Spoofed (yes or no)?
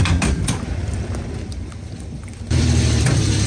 yes